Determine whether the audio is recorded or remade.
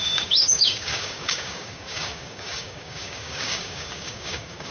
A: remade